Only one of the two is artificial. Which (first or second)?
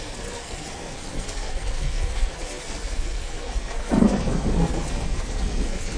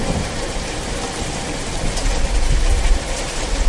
first